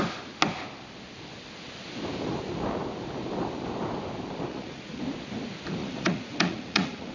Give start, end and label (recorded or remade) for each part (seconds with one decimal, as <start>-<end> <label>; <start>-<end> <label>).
0.0-4.5 recorded; 4.5-5.0 remade; 5.0-5.8 recorded; 5.8-7.1 remade